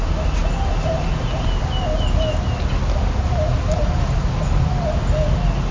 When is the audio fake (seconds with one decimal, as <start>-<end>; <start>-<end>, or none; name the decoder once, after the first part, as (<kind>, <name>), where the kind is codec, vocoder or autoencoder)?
none